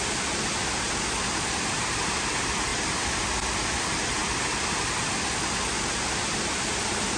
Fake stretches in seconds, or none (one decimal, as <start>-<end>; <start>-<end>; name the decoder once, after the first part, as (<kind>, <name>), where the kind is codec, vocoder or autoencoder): 2.7-3.2 (vocoder, BigVGAN v2)